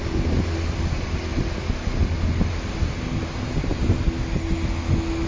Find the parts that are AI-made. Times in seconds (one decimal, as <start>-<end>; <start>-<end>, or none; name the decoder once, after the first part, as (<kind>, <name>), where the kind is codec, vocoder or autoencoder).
none